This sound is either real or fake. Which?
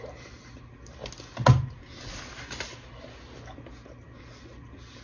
real